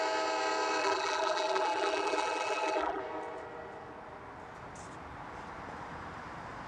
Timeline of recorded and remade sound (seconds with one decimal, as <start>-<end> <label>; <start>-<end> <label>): 0.0-0.8 recorded; 0.8-3.0 remade; 3.0-6.7 recorded

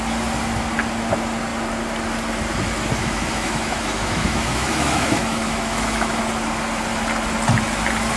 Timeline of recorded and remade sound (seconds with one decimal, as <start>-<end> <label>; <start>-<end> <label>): 0.0-3.0 recorded; 3.0-6.2 remade; 6.2-8.2 recorded

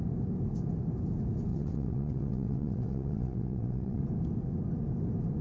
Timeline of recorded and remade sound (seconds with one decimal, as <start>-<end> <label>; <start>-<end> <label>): 0.0-1.5 recorded; 1.5-4.0 remade; 4.0-5.4 recorded

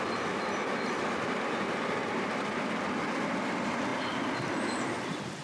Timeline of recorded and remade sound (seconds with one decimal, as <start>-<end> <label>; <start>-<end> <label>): 0.0-5.4 recorded

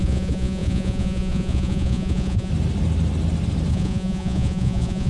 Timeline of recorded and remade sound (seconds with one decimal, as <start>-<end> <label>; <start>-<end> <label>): 0.0-2.5 remade; 2.5-3.7 recorded; 3.7-5.1 remade